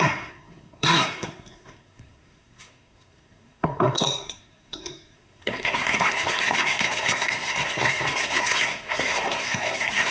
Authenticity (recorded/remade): remade